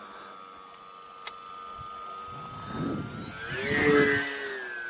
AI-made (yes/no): no